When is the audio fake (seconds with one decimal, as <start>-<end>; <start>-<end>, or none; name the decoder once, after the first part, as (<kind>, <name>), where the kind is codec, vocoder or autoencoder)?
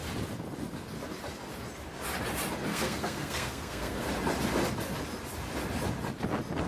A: 2.7-4.1 (codec, SNAC)